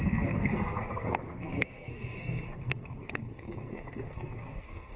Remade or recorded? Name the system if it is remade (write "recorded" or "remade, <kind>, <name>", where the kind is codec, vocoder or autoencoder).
remade, codec, SNAC